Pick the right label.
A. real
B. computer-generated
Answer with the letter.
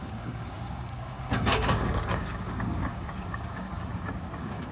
B